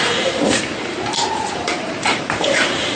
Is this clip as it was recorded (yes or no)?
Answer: no